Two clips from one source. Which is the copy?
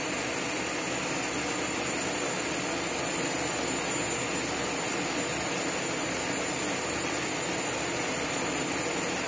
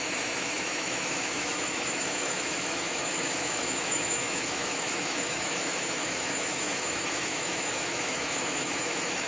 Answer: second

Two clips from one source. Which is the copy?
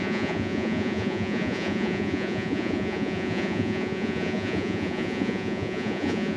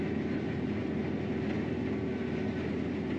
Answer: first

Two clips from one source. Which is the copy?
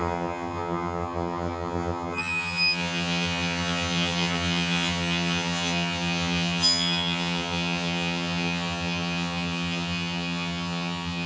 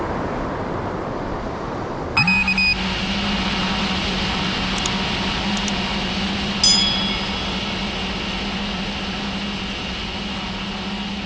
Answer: first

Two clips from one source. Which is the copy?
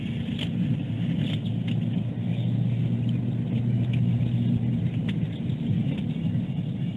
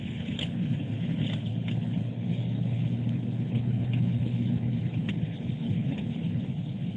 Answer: second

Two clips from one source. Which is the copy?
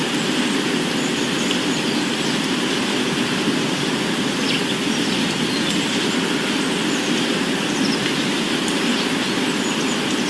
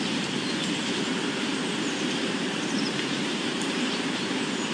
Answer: second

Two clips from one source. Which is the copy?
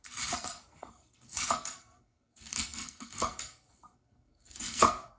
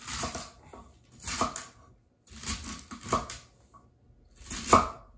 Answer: first